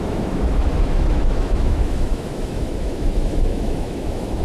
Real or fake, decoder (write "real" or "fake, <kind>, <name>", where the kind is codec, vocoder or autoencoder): fake, autoencoder, DAC-VAE